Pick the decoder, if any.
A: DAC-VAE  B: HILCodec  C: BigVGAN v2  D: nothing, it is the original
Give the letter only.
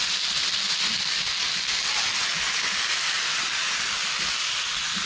D